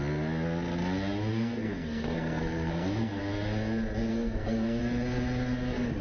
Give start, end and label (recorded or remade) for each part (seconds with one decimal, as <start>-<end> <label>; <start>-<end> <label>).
0.0-1.3 recorded; 1.3-3.2 remade; 3.2-4.1 recorded; 4.1-4.8 remade; 4.8-6.0 recorded